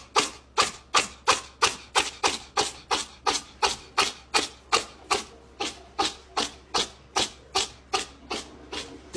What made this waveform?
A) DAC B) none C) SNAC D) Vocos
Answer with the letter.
B